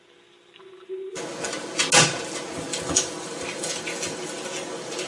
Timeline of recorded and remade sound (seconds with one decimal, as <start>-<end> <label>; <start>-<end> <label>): 0.0-2.7 recorded; 2.7-5.1 remade